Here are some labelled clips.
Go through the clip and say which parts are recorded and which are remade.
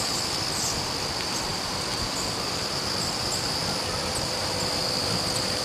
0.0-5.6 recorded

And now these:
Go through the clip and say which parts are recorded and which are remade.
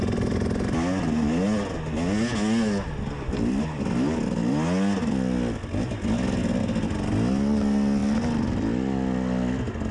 0.0-9.9 recorded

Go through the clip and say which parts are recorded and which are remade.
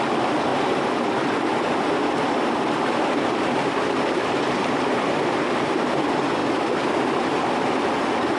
0.0-8.4 recorded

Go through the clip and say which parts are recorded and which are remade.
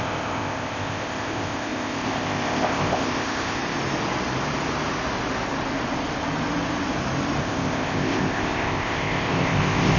0.0-3.6 remade; 3.6-7.4 recorded; 7.4-10.0 remade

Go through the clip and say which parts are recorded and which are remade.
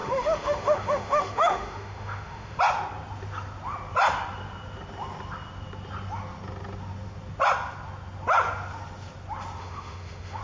0.0-2.6 remade; 2.6-9.6 recorded; 9.6-10.4 remade